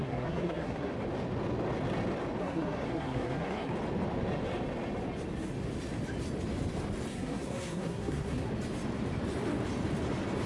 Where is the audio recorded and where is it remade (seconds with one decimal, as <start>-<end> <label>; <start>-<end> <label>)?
0.0-0.9 remade; 0.9-2.4 recorded; 2.4-3.7 remade; 3.7-7.1 recorded; 7.1-8.5 remade; 8.5-10.5 recorded